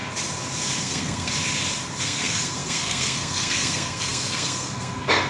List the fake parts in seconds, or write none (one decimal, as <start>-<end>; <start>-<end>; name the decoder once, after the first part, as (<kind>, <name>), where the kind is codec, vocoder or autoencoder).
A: 0.8-1.3 (codec, SNAC); 2.0-5.3